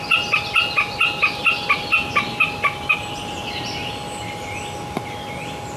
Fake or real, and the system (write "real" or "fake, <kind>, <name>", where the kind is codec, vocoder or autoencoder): real